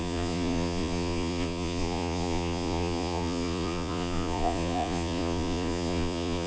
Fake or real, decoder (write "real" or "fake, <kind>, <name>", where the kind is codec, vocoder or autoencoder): fake, vocoder, Vocos